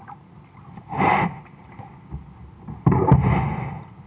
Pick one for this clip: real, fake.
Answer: real